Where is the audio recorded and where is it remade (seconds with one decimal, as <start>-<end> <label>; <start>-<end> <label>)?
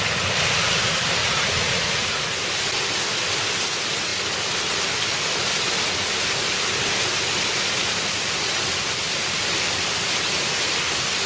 0.0-1.2 recorded; 1.2-2.2 remade; 2.2-11.3 recorded